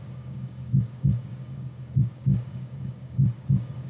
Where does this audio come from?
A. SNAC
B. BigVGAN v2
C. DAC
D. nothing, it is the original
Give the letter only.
C